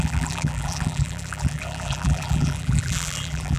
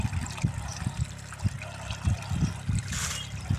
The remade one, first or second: first